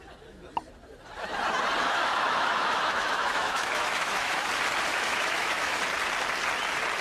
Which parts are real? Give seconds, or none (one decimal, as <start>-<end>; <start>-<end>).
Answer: 0.0-1.8; 4.5-4.9; 5.8-7.0